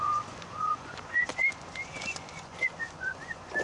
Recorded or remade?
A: remade